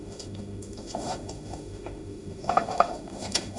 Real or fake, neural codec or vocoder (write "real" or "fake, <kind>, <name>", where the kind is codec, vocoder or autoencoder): fake, autoencoder, DAC-VAE